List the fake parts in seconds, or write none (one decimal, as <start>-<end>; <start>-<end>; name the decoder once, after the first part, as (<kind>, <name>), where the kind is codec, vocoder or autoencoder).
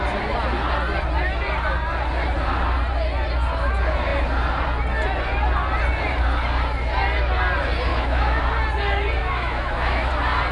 7.9-8.4 (autoencoder, DAC-VAE); 9.2-10.1